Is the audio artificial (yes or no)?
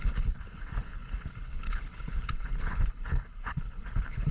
yes